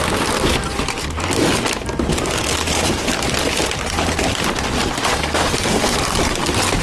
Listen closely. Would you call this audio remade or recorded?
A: recorded